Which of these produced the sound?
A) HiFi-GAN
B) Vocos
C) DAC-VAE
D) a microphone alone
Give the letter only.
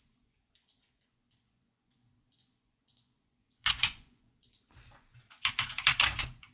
B